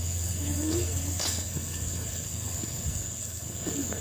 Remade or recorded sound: remade